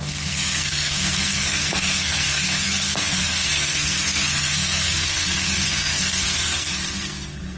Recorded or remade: remade